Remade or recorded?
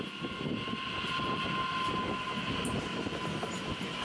recorded